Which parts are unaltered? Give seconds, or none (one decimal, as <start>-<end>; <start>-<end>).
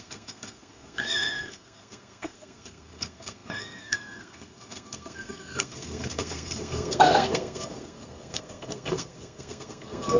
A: none